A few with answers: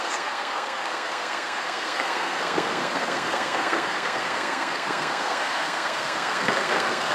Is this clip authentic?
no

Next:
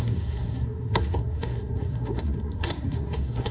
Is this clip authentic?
no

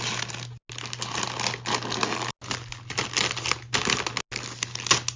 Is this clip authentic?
yes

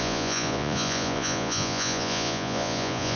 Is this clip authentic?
no